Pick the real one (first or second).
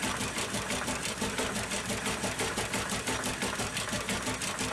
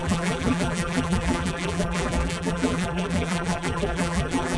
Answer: first